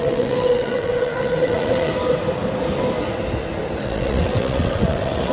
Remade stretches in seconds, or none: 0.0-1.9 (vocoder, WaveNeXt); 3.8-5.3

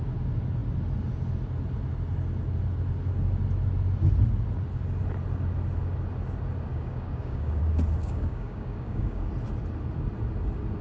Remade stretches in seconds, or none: 6.7-7.6 (codec, DAC); 8.0-9.3

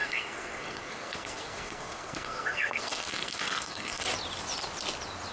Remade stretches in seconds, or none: 0.0-4.1 (codec, SNAC)

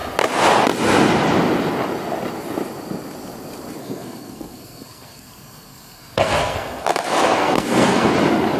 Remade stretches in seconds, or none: 3.8-8.1 (codec, SNAC)

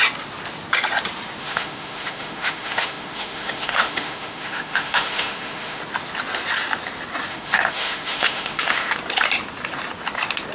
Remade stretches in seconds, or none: 1.4-5.8 (autoencoder, DAC-VAE); 7.3-8.9